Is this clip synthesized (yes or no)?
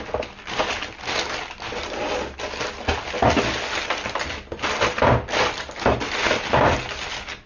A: no